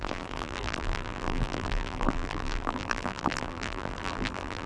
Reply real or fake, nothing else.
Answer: fake